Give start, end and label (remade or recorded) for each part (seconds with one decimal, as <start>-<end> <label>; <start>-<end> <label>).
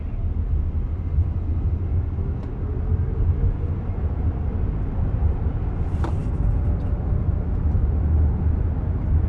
0.0-9.3 recorded